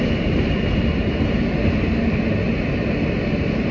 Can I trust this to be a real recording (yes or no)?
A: yes